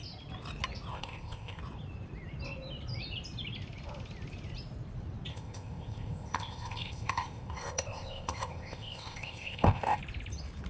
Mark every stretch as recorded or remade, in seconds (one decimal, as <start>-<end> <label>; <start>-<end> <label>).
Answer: 0.0-0.9 recorded; 0.9-1.6 remade; 1.6-5.3 recorded; 5.3-10.0 remade; 10.0-10.7 recorded